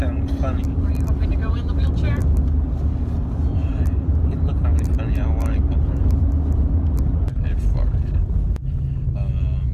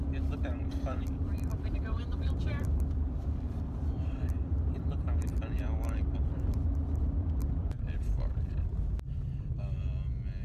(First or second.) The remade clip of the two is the second